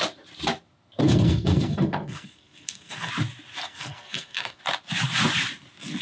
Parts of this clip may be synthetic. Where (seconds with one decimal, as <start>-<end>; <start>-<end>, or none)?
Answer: 1.0-3.1; 3.6-4.6

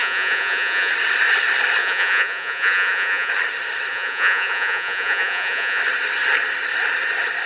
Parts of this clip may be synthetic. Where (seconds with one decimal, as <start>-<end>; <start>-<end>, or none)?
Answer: 0.0-0.9; 1.8-3.3; 3.9-5.8

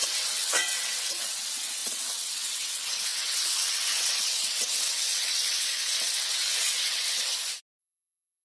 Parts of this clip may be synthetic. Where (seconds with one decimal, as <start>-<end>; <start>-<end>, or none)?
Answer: 0.0-7.3; 7.8-8.4

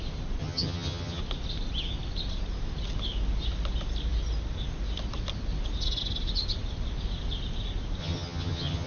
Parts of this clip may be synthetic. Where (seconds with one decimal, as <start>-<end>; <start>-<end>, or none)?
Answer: 0.4-1.2; 8.0-8.9

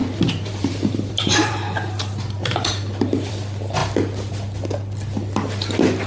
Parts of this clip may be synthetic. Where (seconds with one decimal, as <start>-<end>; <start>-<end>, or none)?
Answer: 0.0-3.3

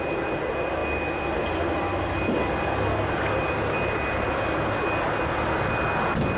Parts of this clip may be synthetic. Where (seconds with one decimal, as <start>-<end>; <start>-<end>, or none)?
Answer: none